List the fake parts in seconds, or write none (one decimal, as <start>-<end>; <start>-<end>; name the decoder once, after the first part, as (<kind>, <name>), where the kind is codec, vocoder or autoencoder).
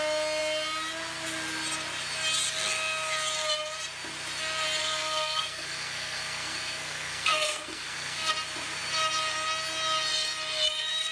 4.8-8.3 (codec, SNAC)